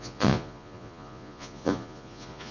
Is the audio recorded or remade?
remade